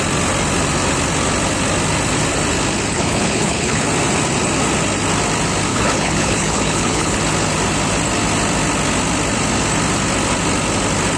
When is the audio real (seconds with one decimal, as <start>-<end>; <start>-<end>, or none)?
0.0-2.9; 3.8-5.7; 7.2-11.2